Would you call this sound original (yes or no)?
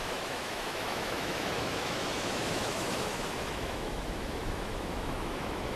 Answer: no